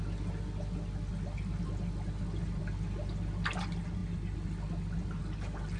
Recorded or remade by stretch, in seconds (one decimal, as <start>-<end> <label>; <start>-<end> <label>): 0.0-5.8 recorded

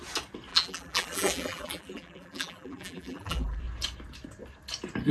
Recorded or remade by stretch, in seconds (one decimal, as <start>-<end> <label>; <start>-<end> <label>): 0.0-0.5 recorded; 0.5-3.6 remade; 3.6-5.1 recorded

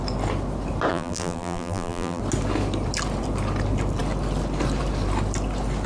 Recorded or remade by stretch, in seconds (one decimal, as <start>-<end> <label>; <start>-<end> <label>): 0.0-0.9 recorded; 0.9-2.2 remade; 2.2-5.9 recorded

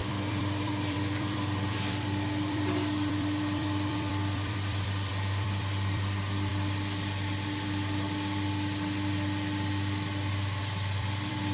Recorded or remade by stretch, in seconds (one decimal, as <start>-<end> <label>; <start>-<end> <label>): 0.0-6.5 remade; 6.5-10.6 recorded; 10.6-11.5 remade

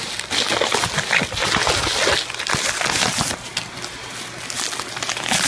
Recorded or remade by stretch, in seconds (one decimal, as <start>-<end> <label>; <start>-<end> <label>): 0.0-5.5 recorded